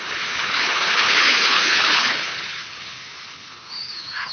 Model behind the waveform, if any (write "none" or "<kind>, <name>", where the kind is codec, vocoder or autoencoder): codec, HILCodec